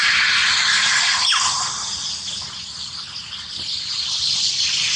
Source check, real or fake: real